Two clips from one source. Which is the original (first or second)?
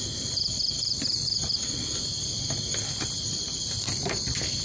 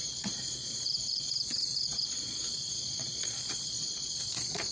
first